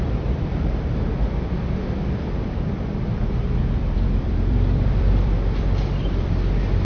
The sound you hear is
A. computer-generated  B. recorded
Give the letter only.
A